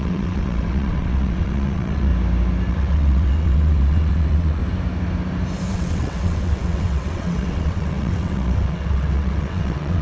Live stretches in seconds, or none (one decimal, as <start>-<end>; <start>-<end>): 2.1-2.7; 4.6-5.7